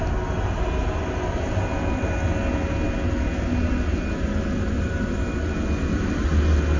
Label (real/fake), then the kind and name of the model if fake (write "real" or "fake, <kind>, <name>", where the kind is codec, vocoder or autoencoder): real